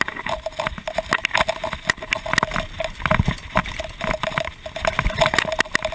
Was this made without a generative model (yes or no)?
yes